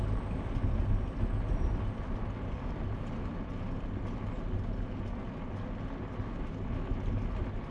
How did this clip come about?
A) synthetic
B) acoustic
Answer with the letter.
B